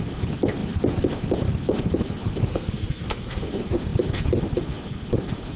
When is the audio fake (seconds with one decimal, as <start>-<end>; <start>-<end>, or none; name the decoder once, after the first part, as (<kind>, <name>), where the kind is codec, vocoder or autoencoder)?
2.5-3.5 (codec, SNAC)